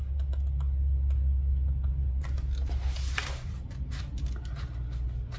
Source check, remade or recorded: recorded